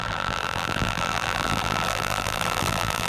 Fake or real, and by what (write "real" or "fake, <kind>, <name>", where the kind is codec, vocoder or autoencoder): fake, vocoder, BigVGAN v2